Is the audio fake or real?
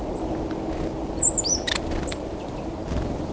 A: real